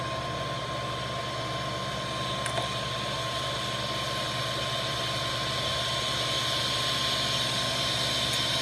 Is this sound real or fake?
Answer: real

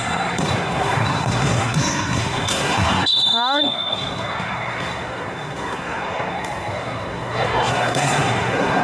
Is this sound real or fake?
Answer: fake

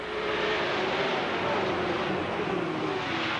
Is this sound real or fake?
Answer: real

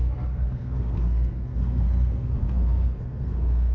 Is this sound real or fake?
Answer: fake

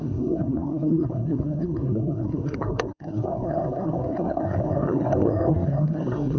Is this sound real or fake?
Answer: fake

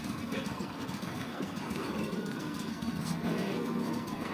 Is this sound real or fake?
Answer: fake